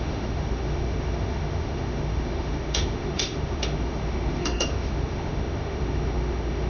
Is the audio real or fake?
fake